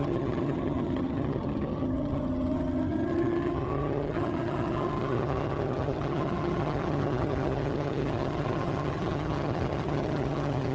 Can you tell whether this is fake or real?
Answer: fake